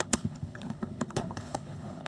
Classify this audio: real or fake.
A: fake